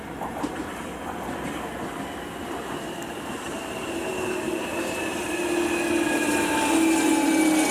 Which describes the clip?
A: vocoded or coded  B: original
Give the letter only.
B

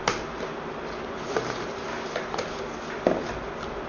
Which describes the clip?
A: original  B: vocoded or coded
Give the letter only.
A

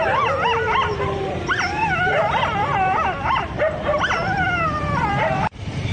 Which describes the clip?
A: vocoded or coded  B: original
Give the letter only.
A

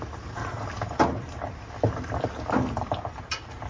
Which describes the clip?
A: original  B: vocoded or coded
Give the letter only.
A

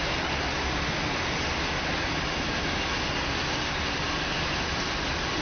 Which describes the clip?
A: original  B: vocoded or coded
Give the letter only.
A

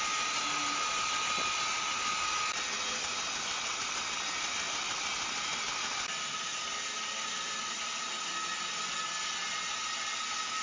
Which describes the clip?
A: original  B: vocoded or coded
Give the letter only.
A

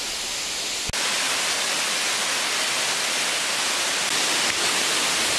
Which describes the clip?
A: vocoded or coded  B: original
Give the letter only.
B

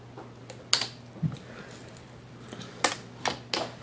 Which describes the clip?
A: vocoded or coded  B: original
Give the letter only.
B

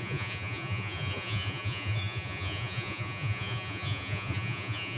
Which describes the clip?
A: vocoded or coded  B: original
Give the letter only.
A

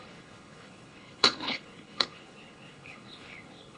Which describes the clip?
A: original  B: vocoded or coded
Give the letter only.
B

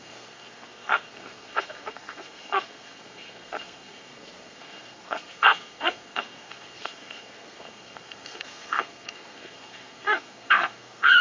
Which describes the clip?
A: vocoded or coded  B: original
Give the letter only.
A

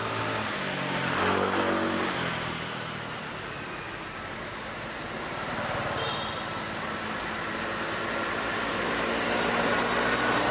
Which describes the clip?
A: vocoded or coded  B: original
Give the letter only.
B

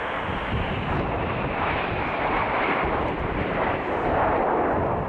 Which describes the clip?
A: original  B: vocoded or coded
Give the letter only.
A